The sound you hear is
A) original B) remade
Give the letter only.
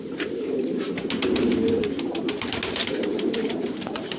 B